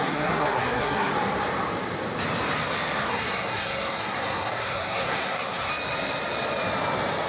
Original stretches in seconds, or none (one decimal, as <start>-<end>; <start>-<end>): 1.1-3.1; 5.7-7.3